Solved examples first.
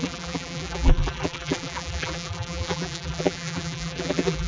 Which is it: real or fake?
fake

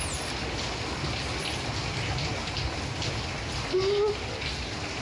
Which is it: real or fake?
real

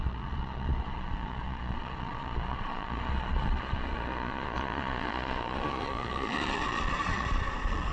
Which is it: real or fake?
fake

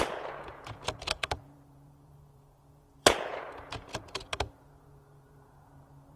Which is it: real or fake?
fake